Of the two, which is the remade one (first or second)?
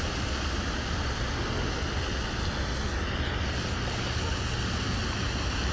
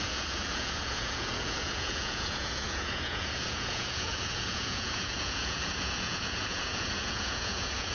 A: second